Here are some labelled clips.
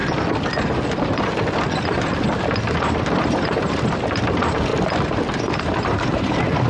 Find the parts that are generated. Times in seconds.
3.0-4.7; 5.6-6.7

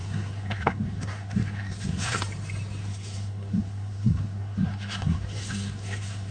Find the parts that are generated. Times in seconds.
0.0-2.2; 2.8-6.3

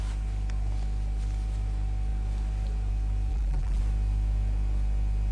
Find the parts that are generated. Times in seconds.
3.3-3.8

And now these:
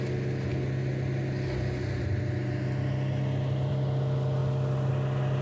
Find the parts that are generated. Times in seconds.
none